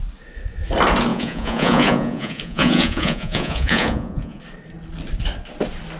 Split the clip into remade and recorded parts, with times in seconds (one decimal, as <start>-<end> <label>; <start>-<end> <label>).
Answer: 0.0-1.1 recorded; 1.1-4.4 remade; 4.4-6.0 recorded